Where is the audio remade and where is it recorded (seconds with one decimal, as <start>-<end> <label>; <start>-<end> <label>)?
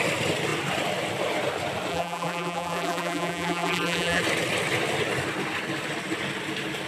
0.0-1.9 recorded; 1.9-4.2 remade; 4.2-6.9 recorded